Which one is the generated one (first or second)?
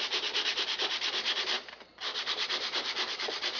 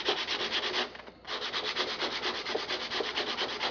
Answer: first